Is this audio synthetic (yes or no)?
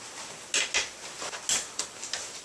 no